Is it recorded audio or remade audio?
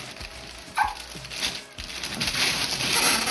recorded